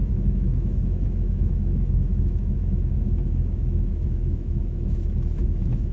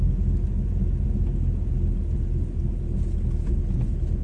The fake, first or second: first